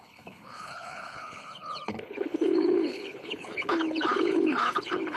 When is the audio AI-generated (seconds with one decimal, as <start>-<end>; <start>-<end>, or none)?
0.0-5.2